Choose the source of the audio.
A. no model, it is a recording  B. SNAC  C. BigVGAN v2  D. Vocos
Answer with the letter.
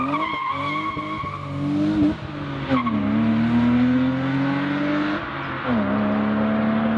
A